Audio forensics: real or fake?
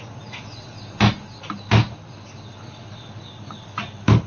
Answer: real